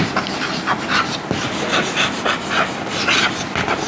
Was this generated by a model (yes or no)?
no